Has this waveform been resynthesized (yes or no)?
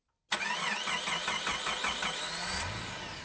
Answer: no